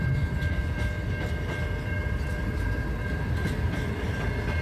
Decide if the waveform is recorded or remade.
recorded